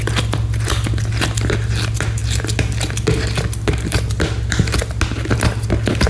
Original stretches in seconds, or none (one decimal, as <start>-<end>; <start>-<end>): 0.0-6.1